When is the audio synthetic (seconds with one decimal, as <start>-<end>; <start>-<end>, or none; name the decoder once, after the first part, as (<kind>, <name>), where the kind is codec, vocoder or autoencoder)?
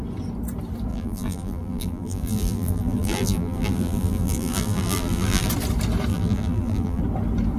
0.9-5.5 (vocoder, BigVGAN v2); 6.1-7.0